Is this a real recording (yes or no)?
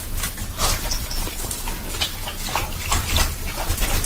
yes